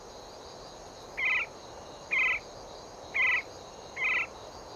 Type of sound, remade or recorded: recorded